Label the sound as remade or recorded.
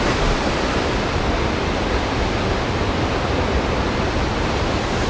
recorded